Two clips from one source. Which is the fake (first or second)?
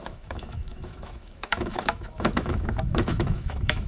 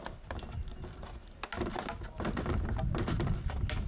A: first